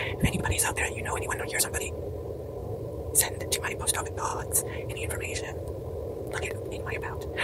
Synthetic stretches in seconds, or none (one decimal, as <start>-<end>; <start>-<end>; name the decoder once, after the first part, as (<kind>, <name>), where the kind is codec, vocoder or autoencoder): 2.6-3.5 (vocoder, BigVGAN v2); 5.5-6.2